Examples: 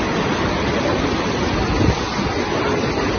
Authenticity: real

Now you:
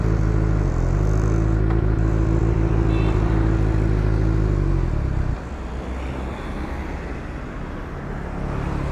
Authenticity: real